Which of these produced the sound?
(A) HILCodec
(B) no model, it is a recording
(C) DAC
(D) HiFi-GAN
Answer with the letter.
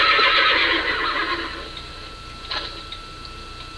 B